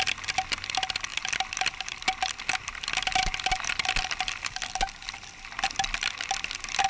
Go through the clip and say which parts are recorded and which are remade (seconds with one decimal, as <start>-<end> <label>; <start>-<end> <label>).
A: 0.0-6.9 recorded

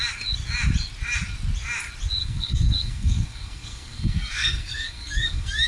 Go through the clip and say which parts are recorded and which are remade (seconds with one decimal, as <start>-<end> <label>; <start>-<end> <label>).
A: 0.0-2.2 recorded; 2.2-5.7 remade

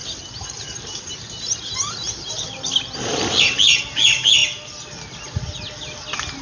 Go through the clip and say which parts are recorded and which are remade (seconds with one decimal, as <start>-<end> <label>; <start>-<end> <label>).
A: 0.0-6.4 recorded

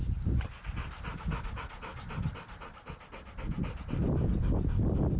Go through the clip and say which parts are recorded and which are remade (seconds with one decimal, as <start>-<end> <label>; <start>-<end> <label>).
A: 0.0-5.2 recorded

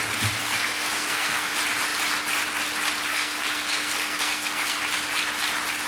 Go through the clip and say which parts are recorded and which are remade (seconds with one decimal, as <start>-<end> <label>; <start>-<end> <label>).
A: 0.0-0.4 recorded; 0.4-1.5 remade; 1.5-3.1 recorded; 3.1-4.8 remade; 4.8-5.9 recorded